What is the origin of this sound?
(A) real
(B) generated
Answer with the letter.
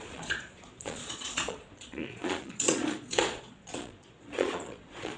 B